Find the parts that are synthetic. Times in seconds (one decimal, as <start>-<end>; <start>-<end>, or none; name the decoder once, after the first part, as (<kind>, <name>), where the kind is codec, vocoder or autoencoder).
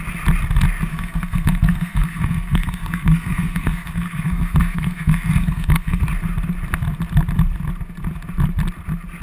0.9-6.0 (codec, SNAC)